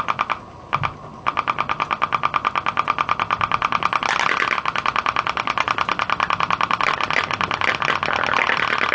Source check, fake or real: real